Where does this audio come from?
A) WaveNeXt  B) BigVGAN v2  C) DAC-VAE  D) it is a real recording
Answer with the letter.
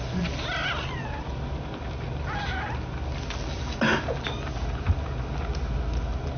D